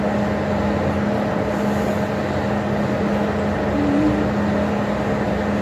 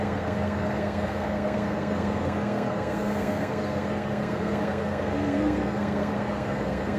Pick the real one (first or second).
first